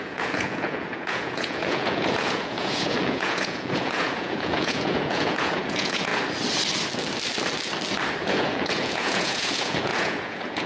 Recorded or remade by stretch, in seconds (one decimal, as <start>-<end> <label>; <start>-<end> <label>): 0.0-6.1 remade; 6.1-8.2 recorded; 8.2-10.7 remade